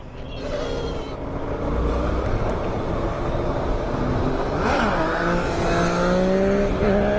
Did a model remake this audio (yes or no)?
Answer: no